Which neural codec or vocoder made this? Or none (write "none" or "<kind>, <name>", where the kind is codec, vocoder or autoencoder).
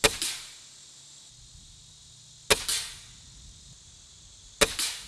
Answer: none